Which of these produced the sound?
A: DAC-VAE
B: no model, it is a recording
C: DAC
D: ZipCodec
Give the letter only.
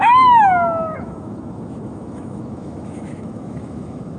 A